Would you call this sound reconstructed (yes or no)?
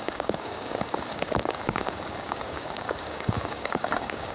yes